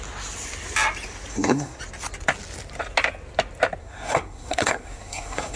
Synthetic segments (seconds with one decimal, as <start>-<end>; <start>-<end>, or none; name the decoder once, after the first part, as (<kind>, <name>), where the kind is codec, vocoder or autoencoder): 1.3-1.8 (codec, SNAC); 3.8-5.6

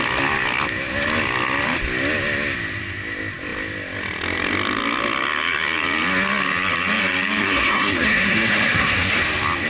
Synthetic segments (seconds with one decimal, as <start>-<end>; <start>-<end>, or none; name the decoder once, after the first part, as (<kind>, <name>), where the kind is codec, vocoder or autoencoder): 7.4-9.2 (codec, SNAC)

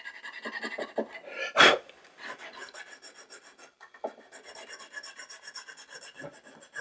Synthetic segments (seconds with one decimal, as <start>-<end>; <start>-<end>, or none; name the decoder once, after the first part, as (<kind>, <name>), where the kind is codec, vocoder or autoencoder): none